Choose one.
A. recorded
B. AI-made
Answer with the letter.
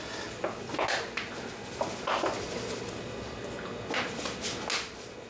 A